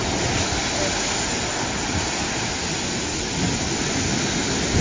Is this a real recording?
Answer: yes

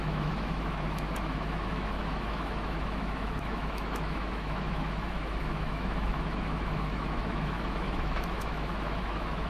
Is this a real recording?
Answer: no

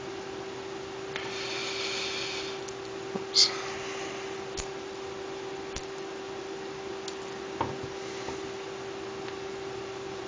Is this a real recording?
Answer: yes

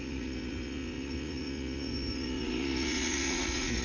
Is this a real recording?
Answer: no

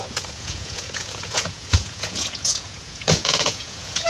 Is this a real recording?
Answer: no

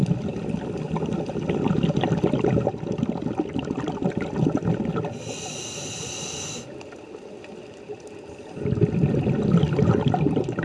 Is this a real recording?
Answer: yes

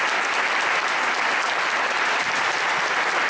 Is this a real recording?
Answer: yes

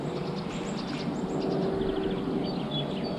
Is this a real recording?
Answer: yes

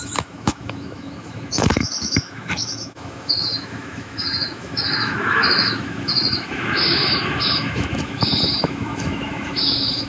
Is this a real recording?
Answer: no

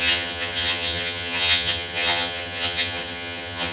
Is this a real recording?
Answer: no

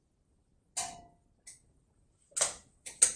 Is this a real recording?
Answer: yes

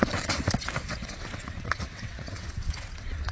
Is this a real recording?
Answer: no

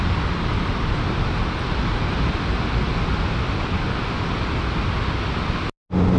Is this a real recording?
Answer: yes